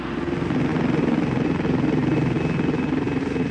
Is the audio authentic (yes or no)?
yes